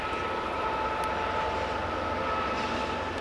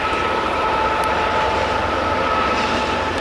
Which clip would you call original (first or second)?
first